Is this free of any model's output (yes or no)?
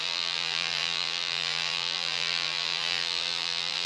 no